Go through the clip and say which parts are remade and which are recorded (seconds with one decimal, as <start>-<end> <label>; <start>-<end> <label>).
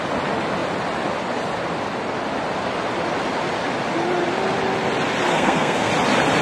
0.0-5.3 recorded; 5.3-5.9 remade; 5.9-6.4 recorded